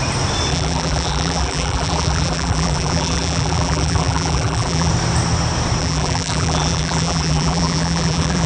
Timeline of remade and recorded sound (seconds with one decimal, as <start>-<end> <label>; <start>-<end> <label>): 0.0-0.5 recorded; 0.5-4.9 remade; 4.9-5.8 recorded; 5.8-8.5 remade